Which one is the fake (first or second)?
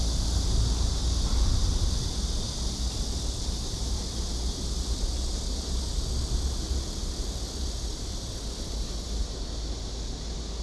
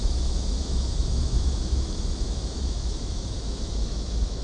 second